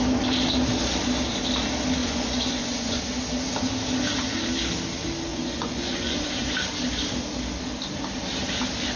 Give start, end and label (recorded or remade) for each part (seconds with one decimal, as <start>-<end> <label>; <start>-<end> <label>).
0.0-2.0 recorded; 2.0-3.0 remade; 3.0-5.3 recorded; 5.3-6.3 remade; 6.3-9.0 recorded